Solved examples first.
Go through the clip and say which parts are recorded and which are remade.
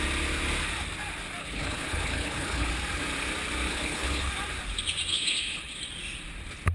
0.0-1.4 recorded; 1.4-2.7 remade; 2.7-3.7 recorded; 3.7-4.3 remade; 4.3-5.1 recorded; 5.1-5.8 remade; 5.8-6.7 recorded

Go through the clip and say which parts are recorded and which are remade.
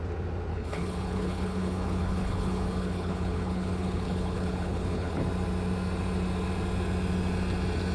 0.0-0.5 recorded; 0.5-5.2 remade; 5.2-7.9 recorded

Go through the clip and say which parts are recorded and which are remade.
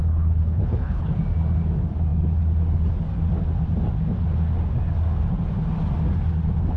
0.0-1.2 remade; 1.2-6.8 recorded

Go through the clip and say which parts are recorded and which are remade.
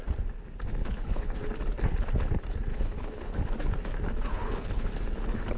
0.0-0.8 recorded; 0.8-1.4 remade; 1.4-2.7 recorded; 2.7-3.4 remade; 3.4-4.3 recorded; 4.3-4.9 remade; 4.9-5.6 recorded